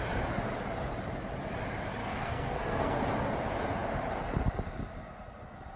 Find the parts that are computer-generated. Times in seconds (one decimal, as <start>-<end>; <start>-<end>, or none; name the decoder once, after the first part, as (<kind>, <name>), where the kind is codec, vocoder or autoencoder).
2.0-3.0 (codec, SNAC)